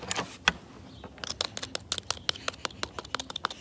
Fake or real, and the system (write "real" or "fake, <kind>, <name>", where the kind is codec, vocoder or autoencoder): real